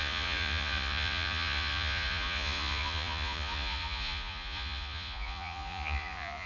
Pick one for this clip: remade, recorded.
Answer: remade